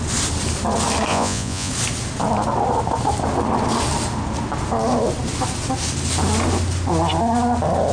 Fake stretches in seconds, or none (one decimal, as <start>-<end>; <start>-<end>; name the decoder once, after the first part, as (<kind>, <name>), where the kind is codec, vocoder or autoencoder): 1.1-1.7 (vocoder, Vocos)

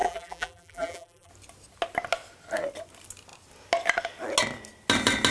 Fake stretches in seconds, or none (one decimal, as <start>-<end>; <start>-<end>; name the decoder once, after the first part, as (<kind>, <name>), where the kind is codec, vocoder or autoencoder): 0.0-1.3 (vocoder, BigVGAN v2)